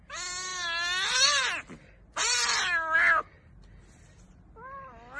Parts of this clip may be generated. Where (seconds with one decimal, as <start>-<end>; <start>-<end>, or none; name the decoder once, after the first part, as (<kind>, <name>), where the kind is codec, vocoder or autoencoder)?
none